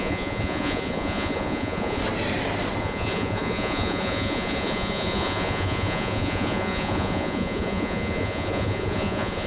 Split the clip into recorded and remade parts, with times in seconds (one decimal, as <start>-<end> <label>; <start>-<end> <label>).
0.0-2.0 remade; 2.0-2.8 recorded; 2.8-9.5 remade

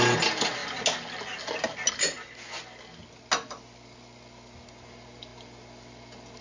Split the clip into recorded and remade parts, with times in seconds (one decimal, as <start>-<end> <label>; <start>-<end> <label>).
0.0-6.4 recorded

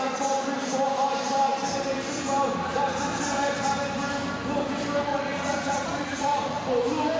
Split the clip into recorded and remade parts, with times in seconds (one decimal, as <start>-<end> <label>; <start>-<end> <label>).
0.0-5.1 recorded; 5.1-6.6 remade; 6.6-7.2 recorded

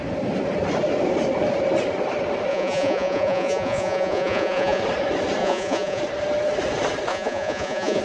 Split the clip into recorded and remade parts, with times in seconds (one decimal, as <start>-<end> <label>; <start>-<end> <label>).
0.0-2.5 recorded; 2.5-4.8 remade; 4.8-5.4 recorded; 5.4-6.0 remade; 6.0-7.1 recorded; 7.1-8.0 remade

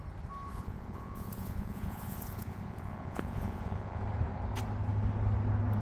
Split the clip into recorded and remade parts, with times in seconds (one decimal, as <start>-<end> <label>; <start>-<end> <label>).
0.0-0.5 recorded; 0.5-4.0 remade; 4.0-5.8 recorded

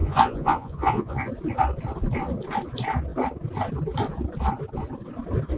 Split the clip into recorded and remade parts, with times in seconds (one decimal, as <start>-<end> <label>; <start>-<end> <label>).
0.0-1.3 remade; 1.3-5.6 recorded